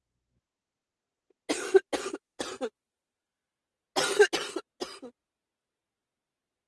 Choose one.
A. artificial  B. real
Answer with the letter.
B